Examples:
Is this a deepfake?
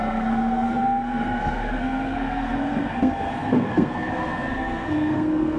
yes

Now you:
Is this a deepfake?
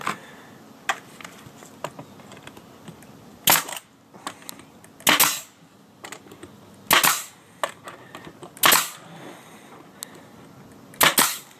no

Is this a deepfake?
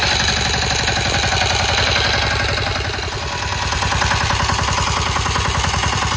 no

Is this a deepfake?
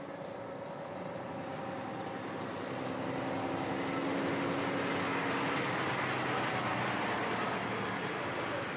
no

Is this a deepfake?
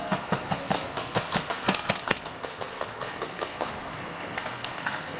yes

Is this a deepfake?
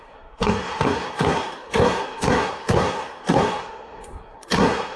yes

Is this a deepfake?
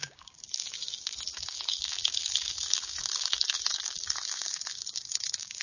yes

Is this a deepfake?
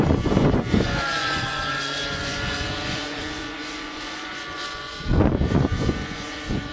yes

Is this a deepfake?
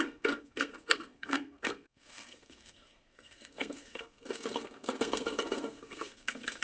yes